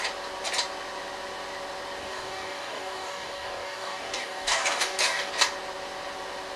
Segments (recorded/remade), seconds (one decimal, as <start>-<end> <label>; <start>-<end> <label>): 0.0-2.0 recorded; 2.0-5.3 remade; 5.3-6.6 recorded